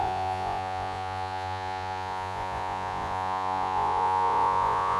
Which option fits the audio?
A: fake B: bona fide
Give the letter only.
A